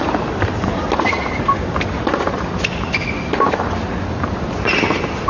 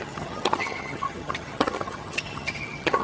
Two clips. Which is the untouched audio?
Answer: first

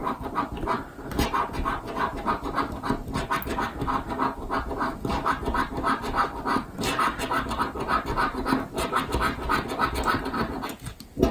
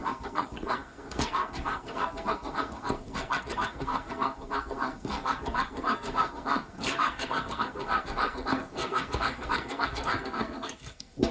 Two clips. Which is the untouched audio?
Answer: first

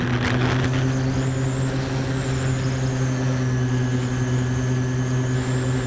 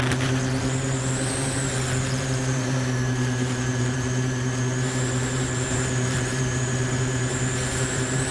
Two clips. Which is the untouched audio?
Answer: first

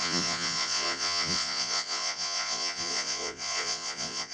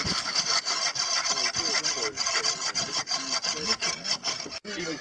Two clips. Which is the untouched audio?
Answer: second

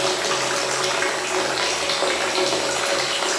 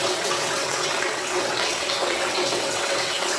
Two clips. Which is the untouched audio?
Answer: first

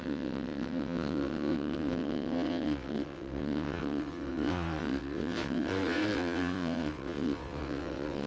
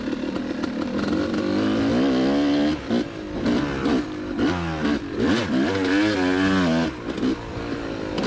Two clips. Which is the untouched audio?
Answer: second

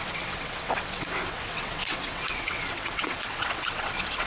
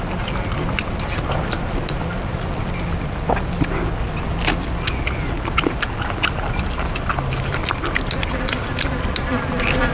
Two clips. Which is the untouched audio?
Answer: second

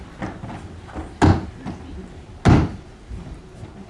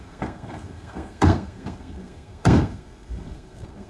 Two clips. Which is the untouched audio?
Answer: first